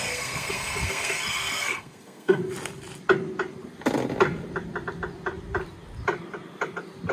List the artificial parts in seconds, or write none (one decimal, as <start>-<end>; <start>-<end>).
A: 0.0-2.4